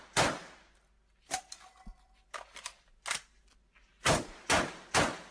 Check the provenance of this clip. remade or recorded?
recorded